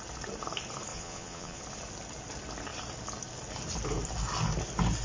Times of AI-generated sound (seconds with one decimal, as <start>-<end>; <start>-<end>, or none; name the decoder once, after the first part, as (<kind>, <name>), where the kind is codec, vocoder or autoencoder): 0.9-1.6 (vocoder, Vocos)